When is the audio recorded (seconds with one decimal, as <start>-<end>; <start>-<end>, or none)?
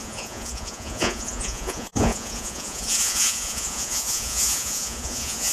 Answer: none